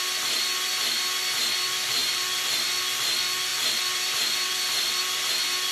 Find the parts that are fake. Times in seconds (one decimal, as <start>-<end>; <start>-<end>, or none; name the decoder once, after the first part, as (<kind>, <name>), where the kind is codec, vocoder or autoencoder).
2.0-2.8 (vocoder, BigVGAN v2); 3.5-5.3